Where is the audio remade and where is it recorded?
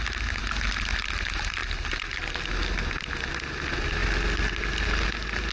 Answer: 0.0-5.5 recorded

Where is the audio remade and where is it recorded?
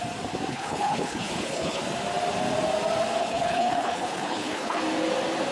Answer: 0.0-0.5 recorded; 0.5-1.8 remade; 1.8-3.2 recorded; 3.2-4.8 remade; 4.8-5.5 recorded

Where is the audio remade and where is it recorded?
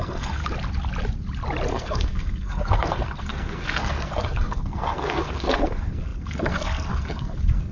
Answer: 0.0-0.4 remade; 0.4-1.7 recorded; 1.7-7.7 remade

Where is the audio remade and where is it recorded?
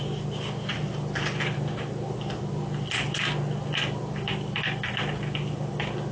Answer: 0.0-6.1 recorded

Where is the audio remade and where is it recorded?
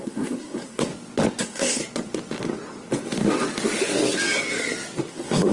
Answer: 0.0-0.9 remade; 0.9-1.4 recorded; 1.4-1.8 remade; 1.8-5.1 recorded; 5.1-5.5 remade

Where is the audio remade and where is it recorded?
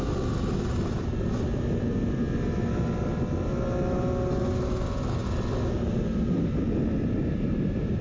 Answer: 0.0-8.0 recorded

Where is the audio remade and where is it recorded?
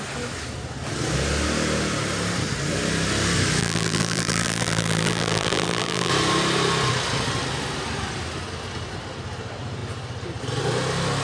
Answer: 0.0-3.6 recorded; 3.6-6.1 remade; 6.1-11.2 recorded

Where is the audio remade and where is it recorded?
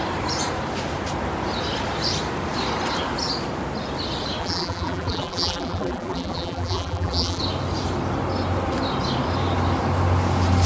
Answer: 0.0-4.4 recorded; 4.4-7.4 remade; 7.4-10.7 recorded